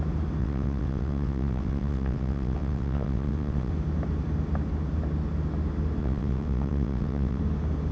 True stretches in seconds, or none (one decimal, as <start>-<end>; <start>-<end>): 0.0-0.4; 3.7-6.0; 7.4-7.9